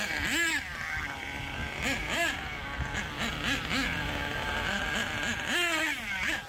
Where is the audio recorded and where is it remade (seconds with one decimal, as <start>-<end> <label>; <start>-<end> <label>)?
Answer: 0.0-6.5 recorded